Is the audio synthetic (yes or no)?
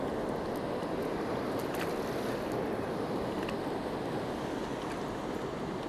no